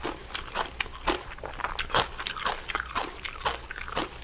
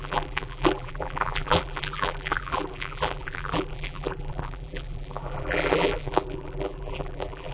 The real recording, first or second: first